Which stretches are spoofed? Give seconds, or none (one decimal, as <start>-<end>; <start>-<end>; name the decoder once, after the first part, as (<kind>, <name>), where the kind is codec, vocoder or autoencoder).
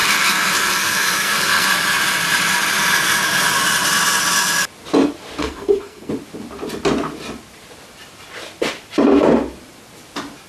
0.0-1.7 (codec, SNAC); 5.4-6.1